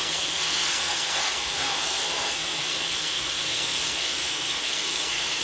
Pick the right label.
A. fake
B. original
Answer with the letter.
A